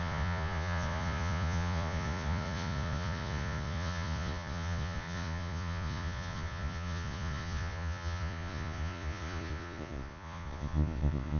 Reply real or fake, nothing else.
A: fake